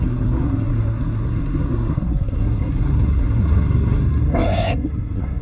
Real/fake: fake